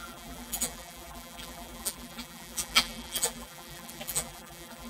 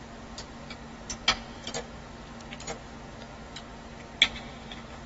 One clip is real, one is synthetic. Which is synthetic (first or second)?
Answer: first